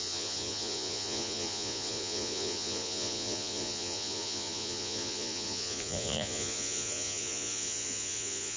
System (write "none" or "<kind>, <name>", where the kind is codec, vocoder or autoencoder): vocoder, Vocos